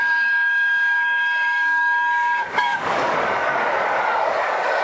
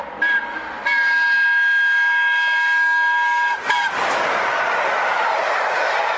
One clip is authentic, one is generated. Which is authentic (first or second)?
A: second